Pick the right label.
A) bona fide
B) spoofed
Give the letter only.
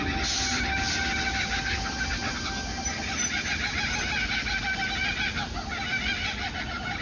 A